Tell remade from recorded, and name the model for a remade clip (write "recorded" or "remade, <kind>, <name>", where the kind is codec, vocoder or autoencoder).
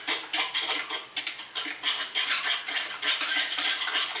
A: recorded